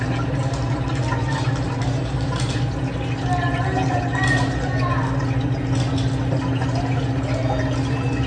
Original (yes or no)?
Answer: yes